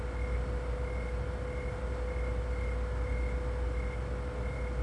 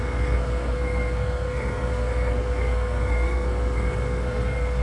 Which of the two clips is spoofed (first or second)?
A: second